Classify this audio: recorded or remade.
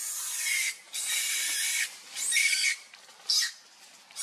remade